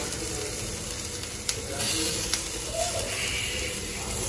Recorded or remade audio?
recorded